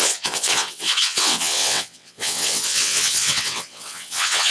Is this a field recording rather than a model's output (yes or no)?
no